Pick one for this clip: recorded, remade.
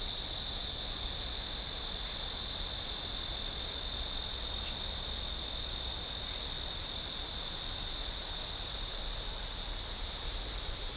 recorded